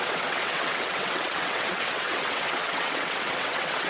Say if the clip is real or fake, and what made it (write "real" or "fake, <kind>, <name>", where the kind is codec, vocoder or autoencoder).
fake, vocoder, WaveNeXt